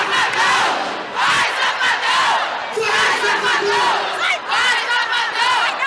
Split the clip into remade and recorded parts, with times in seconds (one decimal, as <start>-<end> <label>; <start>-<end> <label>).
0.0-5.9 recorded